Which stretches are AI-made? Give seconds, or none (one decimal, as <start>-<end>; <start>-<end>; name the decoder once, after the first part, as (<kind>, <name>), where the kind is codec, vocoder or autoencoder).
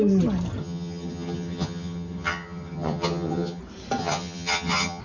0.6-3.6 (vocoder, HiFi-GAN); 4.0-5.0